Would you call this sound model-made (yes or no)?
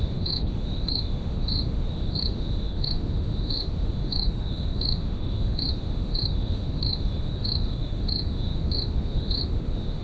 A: yes